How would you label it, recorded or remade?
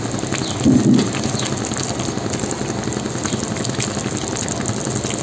recorded